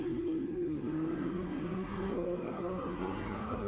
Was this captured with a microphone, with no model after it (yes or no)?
no